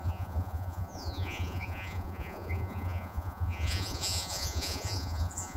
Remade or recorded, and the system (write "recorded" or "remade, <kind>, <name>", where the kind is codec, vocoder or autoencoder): remade, vocoder, Vocos